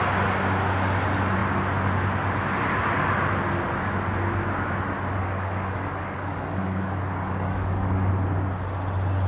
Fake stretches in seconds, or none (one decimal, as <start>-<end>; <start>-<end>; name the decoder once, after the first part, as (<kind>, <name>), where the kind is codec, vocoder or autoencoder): 5.2-8.1 (codec, DAC)

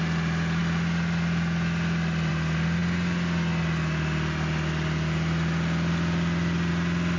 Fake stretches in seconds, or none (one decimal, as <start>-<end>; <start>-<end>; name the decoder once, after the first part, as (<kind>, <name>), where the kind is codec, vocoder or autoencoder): none

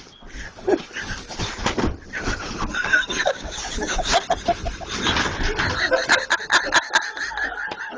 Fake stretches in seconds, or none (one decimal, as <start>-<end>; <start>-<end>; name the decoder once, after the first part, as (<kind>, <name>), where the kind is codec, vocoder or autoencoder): 3.2-4.2 (codec, DAC)

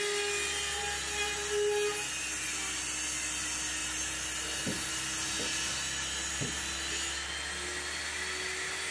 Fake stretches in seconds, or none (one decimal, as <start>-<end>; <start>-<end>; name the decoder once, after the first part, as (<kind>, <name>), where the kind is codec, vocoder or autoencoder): none